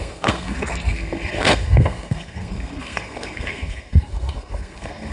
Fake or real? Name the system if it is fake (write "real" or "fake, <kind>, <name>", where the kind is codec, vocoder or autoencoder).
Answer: fake, codec, SNAC